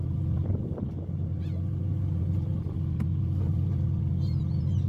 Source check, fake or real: real